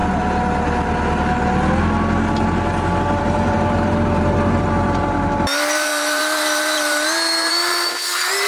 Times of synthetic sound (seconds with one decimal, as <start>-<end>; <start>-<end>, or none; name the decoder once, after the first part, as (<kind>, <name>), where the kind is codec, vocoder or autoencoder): 3.2-8.5 (vocoder, BigVGAN v2)